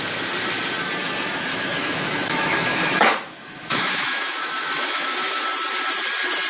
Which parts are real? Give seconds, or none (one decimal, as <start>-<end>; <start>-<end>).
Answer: 0.0-1.5; 5.4-6.5